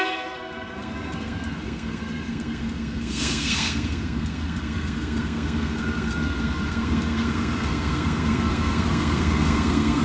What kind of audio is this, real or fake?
fake